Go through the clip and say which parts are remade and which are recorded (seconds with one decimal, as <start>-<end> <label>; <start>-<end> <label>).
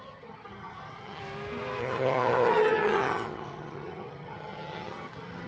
0.0-1.2 remade; 1.2-1.8 recorded; 1.8-5.5 remade